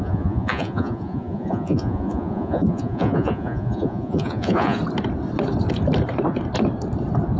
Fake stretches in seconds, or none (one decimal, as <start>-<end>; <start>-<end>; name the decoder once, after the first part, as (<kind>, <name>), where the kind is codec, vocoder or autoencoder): 0.0-4.8 (vocoder, Vocos)